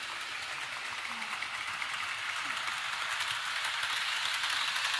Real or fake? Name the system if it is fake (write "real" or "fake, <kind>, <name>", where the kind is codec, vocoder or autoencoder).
real